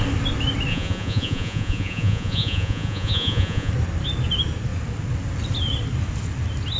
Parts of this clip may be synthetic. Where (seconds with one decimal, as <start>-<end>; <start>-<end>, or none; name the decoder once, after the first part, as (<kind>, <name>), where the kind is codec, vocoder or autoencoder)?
0.7-3.7 (vocoder, Vocos)